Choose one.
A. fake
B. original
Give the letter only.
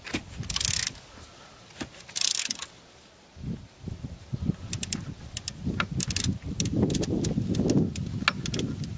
B